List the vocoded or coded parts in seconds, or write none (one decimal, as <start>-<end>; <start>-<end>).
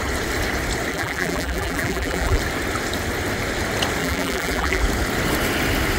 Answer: 0.9-2.4; 4.0-4.8